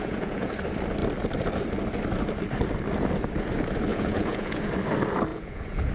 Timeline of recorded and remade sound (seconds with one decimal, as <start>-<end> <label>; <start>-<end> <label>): 0.0-0.5 remade; 0.5-3.9 recorded; 3.9-4.7 remade; 4.7-5.3 recorded; 5.3-5.9 remade

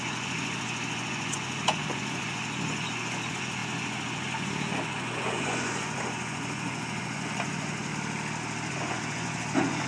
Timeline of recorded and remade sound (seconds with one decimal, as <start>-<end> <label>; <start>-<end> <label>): 0.0-7.9 remade; 7.9-8.7 recorded; 8.7-9.9 remade

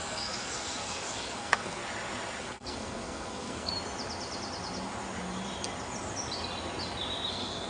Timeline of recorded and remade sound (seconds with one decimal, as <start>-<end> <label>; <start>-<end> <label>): 0.0-1.8 remade; 1.8-2.4 recorded; 2.4-3.7 remade; 3.7-7.3 recorded; 7.3-7.7 remade

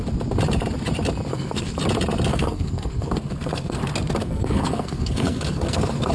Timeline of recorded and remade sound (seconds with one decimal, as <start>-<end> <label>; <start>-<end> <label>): 0.0-1.3 recorded; 1.3-1.8 remade; 1.8-2.3 recorded; 2.3-3.8 remade; 3.8-4.2 recorded; 4.2-6.1 remade

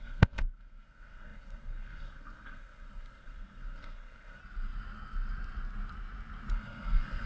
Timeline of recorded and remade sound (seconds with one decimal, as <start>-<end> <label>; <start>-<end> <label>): 0.0-4.4 remade; 4.4-6.5 recorded; 6.5-7.3 remade